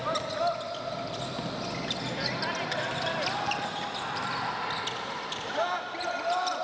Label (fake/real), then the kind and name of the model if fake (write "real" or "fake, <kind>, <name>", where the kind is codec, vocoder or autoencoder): real